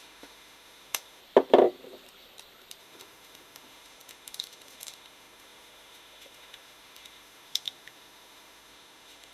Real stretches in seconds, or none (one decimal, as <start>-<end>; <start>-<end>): 1.2-2.8

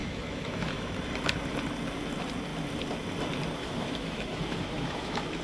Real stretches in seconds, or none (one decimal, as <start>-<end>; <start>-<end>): 0.9-3.6

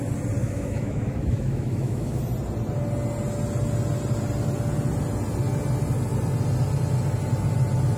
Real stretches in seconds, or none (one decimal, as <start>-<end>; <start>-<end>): 0.0-0.4; 2.2-8.0

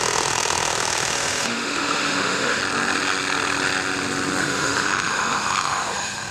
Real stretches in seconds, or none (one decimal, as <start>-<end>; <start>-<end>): 2.6-4.4

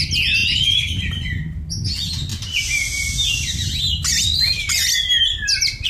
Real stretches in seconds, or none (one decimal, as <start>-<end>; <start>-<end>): 0.0-5.9

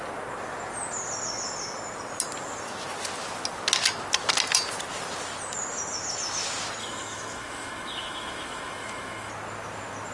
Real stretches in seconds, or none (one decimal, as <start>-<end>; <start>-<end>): 0.0-6.8; 9.3-10.1